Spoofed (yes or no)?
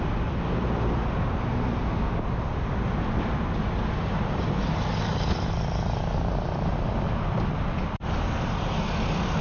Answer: no